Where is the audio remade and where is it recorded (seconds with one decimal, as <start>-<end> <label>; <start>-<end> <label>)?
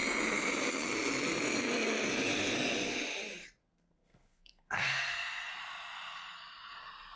0.0-3.6 recorded; 3.6-5.5 remade; 5.5-7.2 recorded